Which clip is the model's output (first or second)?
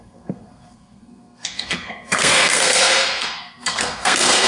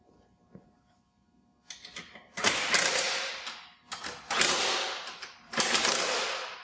first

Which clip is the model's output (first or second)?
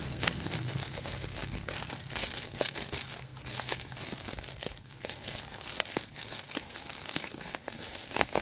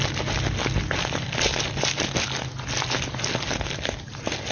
first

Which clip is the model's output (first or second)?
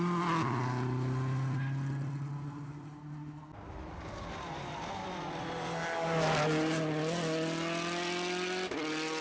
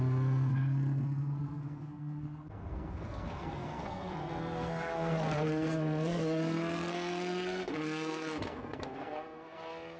second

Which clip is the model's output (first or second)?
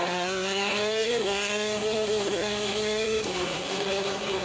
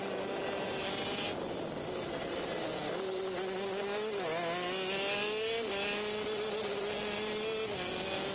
first